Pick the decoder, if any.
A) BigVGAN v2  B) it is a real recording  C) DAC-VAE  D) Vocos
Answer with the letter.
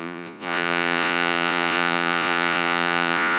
D